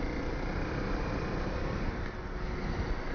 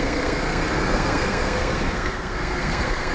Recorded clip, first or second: first